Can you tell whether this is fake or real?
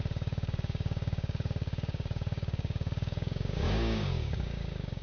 fake